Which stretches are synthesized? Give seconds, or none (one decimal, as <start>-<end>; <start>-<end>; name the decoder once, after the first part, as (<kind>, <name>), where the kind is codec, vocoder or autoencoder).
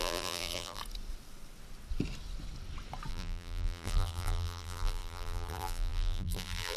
0.0-0.8 (vocoder, BigVGAN v2); 3.1-6.8